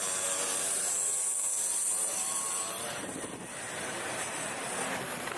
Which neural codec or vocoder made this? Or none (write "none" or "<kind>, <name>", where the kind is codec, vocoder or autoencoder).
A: vocoder, BigVGAN v2